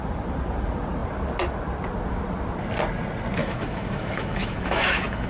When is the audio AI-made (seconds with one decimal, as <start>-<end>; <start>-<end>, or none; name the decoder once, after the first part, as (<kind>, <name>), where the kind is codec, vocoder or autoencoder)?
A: 3.4-5.3 (autoencoder, DAC-VAE)